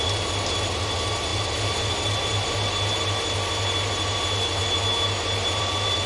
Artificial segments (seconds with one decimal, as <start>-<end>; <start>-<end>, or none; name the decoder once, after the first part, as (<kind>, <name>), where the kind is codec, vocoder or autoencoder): none